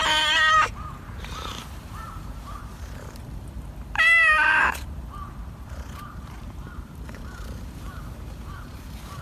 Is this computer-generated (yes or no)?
yes